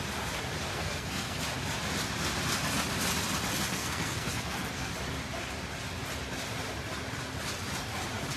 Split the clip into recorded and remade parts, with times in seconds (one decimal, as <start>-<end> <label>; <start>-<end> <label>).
0.0-0.7 recorded; 0.7-1.4 remade; 1.4-3.7 recorded; 3.7-4.9 remade; 4.9-8.4 recorded